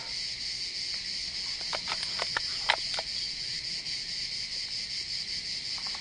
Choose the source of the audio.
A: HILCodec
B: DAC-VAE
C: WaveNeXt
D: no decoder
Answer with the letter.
D